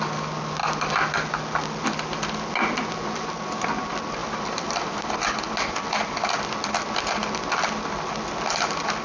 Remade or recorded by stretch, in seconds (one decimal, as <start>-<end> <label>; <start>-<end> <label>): 0.0-4.2 recorded; 4.2-5.5 remade; 5.5-9.0 recorded